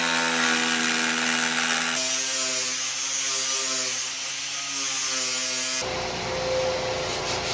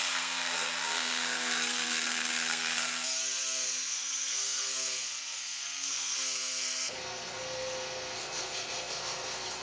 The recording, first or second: first